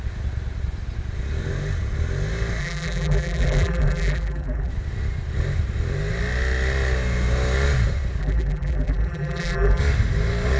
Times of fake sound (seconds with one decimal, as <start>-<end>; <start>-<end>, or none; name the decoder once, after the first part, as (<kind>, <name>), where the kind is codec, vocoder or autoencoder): 2.6-4.7 (vocoder, BigVGAN v2); 8.2-9.8